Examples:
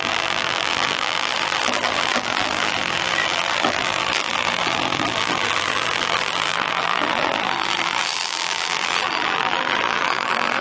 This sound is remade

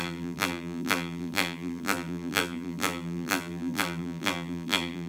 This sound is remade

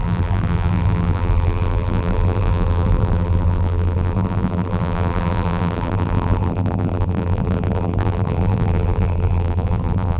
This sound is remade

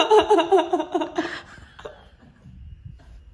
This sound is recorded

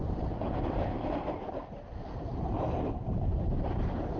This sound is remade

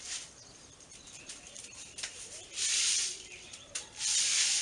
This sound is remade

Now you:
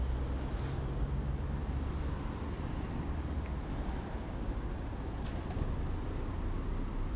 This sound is recorded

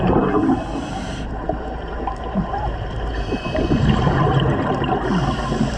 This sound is remade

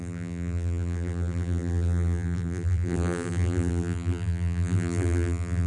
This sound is remade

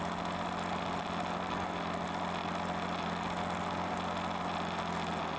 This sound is recorded